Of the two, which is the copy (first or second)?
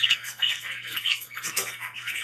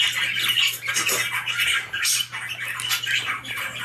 first